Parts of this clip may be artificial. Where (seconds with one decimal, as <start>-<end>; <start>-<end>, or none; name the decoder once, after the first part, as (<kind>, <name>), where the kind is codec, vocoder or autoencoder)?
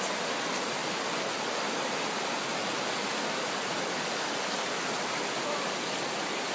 none